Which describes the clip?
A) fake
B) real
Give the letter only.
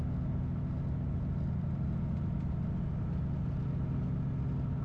B